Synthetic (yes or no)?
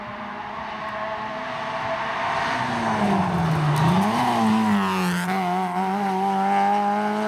no